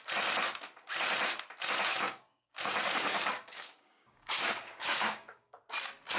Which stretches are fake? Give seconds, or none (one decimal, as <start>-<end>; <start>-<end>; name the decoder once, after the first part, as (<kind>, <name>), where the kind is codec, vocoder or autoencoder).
1.9-5.6 (codec, DAC)